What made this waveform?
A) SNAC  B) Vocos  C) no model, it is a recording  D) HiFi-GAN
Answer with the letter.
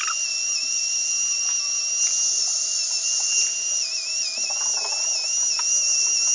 C